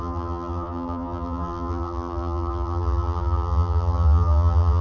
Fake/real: fake